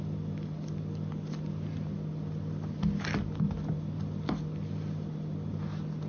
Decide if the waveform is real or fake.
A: real